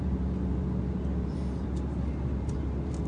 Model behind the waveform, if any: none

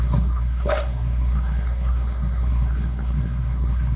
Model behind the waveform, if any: codec, SNAC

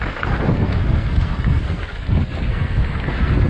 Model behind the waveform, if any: codec, SNAC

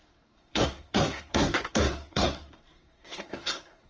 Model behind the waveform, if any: codec, SNAC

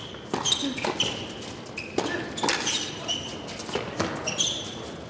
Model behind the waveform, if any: none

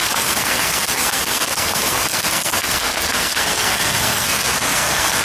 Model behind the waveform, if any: codec, SNAC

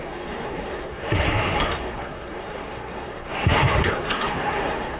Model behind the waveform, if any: codec, SNAC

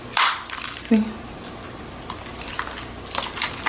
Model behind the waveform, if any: none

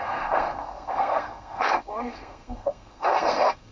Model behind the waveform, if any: codec, SNAC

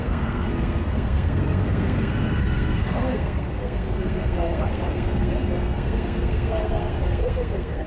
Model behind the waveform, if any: codec, SNAC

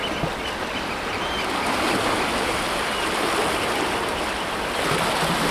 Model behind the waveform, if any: none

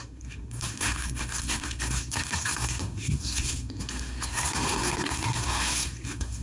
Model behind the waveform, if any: codec, SNAC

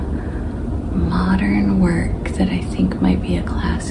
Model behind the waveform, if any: none